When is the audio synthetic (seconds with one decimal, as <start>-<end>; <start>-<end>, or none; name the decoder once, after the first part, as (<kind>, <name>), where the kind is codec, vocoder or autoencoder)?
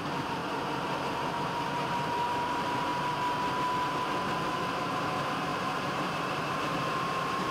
0.0-2.9 (vocoder, BigVGAN v2); 4.7-7.5